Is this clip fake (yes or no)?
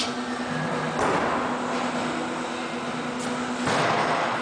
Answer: no